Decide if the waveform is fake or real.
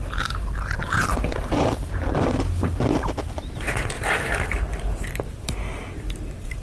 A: fake